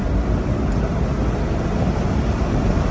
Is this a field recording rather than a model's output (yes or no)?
yes